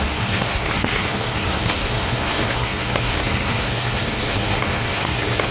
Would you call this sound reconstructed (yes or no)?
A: yes